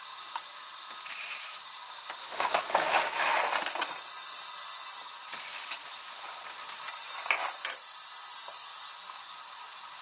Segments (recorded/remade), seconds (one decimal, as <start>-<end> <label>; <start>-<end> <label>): 0.0-2.2 recorded; 2.2-3.3 remade; 3.3-10.0 recorded